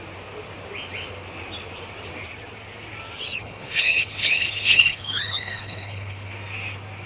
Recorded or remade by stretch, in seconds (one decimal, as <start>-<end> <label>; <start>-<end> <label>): 0.0-3.4 recorded; 3.4-6.3 remade; 6.3-7.1 recorded